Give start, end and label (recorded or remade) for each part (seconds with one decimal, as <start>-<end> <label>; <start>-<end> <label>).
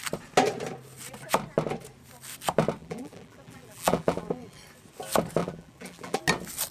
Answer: 0.0-2.8 recorded; 2.8-4.6 remade; 4.6-5.4 recorded; 5.4-6.2 remade; 6.2-6.7 recorded